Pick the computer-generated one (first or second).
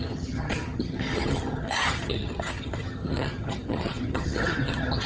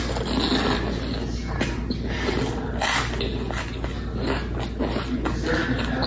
first